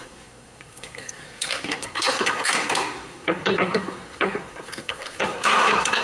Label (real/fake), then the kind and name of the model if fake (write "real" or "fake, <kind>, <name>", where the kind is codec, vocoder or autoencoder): fake, codec, SNAC